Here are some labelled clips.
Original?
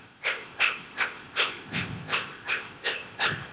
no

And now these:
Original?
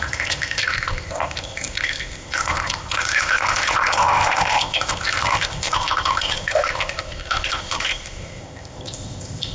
no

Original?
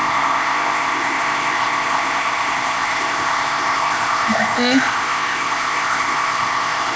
no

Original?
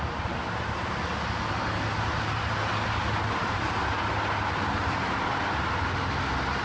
yes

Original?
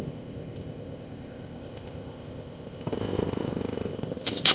no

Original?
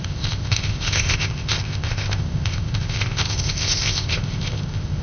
no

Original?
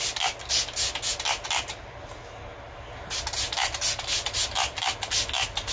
yes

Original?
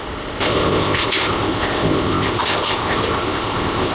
no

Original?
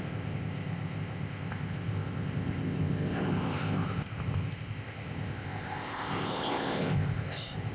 no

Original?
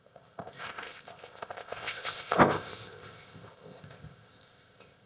no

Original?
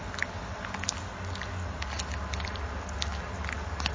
yes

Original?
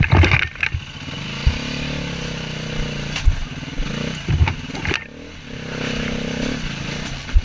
yes